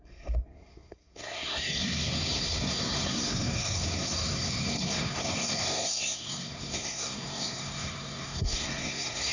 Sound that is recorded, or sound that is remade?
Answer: remade